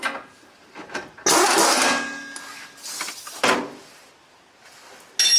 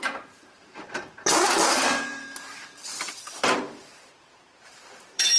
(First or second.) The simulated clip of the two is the second